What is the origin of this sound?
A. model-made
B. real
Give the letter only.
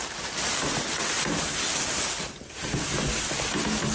B